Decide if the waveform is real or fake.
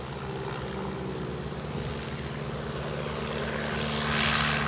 real